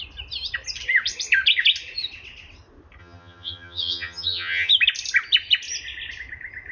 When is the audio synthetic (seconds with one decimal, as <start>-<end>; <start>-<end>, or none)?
3.0-4.7